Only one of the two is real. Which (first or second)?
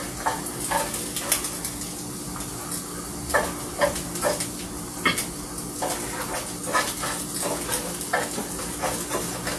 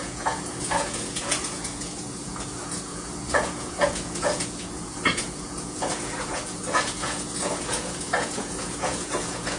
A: first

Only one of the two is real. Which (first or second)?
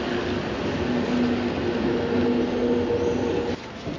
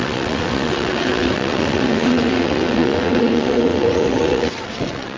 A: first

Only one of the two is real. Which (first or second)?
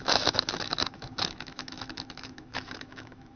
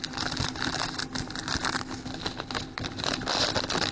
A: second